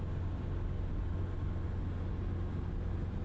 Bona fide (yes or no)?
yes